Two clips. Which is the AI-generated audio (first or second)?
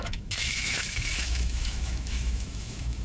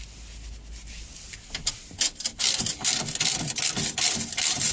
first